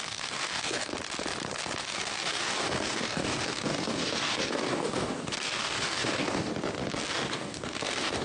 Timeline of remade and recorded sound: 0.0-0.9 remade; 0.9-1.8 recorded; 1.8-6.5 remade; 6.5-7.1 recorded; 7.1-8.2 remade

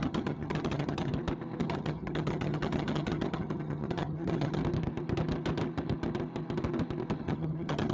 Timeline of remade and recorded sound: 0.0-1.1 remade; 1.1-1.6 recorded; 1.6-4.6 remade; 4.6-7.2 recorded; 7.2-7.9 remade

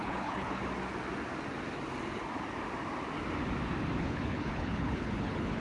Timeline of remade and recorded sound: 0.0-0.6 remade; 0.6-4.0 recorded; 4.0-5.6 remade